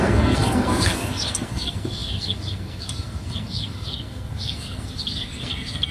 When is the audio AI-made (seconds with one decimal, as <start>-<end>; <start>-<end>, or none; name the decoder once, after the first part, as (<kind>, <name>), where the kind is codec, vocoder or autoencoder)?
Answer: 0.0-5.9 (codec, SNAC)